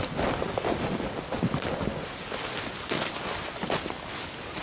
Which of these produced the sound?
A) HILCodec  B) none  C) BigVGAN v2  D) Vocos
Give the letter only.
B